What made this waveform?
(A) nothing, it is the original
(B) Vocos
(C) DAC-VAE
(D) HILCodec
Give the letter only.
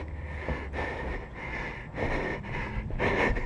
A